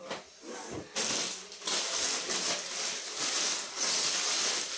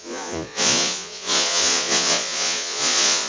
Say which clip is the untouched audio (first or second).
first